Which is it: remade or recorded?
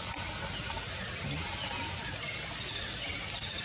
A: recorded